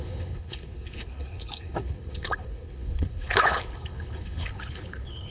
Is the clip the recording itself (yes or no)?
no